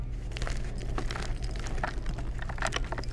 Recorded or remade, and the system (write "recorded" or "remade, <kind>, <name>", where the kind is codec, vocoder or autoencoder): recorded